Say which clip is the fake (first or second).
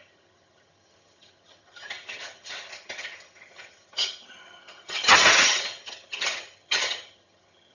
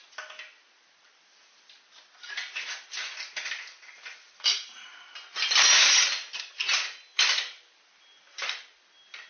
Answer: first